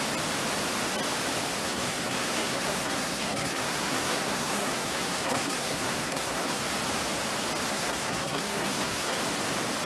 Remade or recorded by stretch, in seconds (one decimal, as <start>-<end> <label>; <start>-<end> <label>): 0.0-1.6 recorded; 1.6-6.6 remade; 6.6-7.7 recorded; 7.7-9.2 remade; 9.2-9.9 recorded